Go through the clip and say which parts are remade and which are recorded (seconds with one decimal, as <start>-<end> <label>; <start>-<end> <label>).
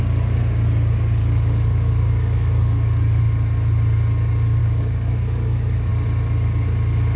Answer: 0.0-1.2 recorded; 1.2-3.2 remade; 3.2-4.6 recorded; 4.6-5.9 remade; 5.9-7.2 recorded